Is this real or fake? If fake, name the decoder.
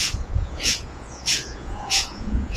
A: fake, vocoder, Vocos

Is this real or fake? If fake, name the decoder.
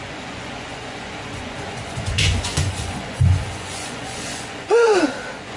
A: fake, vocoder, Vocos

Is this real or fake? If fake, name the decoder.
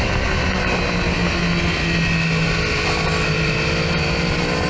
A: real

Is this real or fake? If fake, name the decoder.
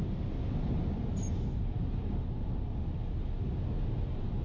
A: real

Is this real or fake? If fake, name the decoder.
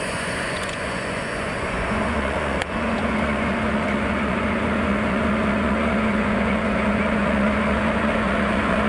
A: fake, vocoder, Vocos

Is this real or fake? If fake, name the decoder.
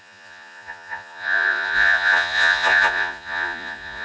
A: fake, vocoder, Vocos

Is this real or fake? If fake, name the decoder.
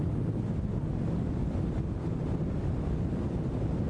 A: real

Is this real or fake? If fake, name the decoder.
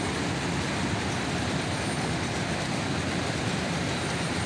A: real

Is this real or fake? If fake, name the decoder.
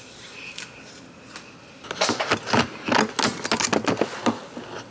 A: real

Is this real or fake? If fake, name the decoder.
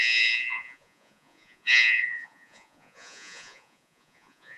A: fake, vocoder, Vocos